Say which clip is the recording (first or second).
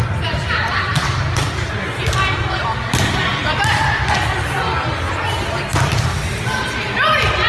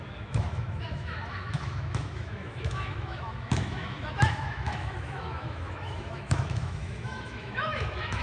first